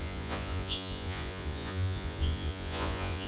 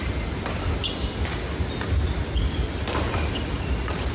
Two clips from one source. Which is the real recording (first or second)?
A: second